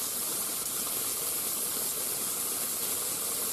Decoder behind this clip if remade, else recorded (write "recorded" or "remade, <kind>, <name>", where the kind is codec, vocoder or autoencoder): recorded